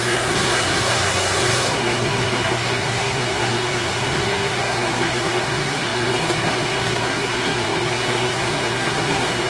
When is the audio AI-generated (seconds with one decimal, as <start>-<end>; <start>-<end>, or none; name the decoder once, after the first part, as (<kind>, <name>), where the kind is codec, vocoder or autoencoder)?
0.0-9.5 (codec, SNAC)